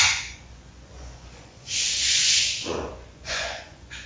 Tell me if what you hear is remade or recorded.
remade